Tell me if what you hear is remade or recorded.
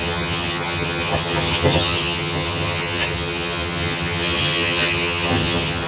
remade